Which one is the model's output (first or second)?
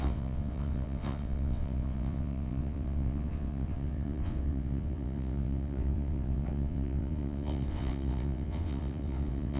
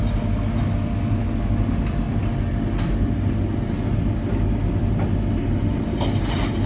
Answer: first